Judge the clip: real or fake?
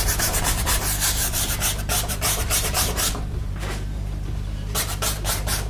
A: fake